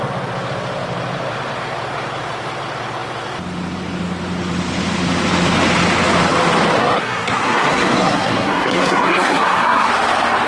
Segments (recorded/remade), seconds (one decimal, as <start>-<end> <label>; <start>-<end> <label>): 0.0-6.8 recorded; 6.8-9.9 remade; 9.9-10.5 recorded